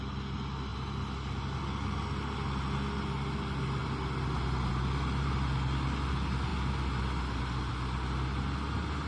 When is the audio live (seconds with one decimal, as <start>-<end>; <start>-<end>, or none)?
0.0-9.1